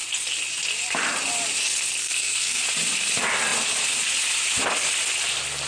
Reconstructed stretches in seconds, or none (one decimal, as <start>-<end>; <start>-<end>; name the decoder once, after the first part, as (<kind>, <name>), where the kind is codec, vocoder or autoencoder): 2.0-2.6 (codec, SNAC)